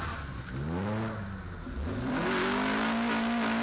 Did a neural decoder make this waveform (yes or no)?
no